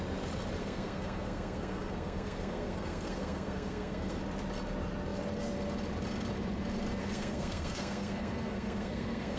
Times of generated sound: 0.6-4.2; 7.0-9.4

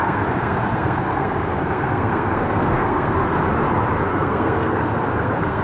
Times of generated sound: 0.0-3.4; 4.1-5.6